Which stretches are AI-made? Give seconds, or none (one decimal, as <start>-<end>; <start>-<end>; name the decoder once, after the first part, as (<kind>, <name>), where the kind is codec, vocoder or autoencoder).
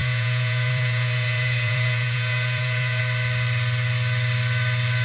0.0-3.0 (vocoder, Vocos)